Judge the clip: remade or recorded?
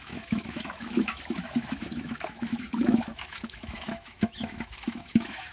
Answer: remade